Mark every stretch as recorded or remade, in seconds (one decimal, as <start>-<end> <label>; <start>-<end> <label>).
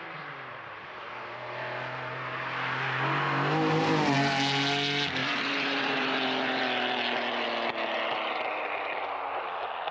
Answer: 0.0-5.2 recorded; 5.2-6.6 remade; 6.6-9.9 recorded